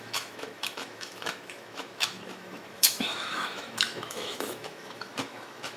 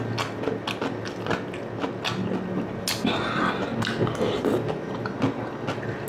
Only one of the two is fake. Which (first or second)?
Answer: first